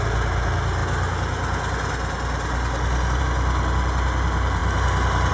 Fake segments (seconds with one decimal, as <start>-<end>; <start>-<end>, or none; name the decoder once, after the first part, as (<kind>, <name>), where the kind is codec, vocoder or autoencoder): none